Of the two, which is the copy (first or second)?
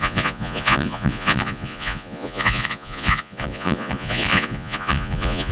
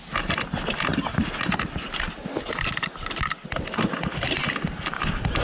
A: first